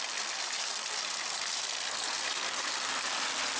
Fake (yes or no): no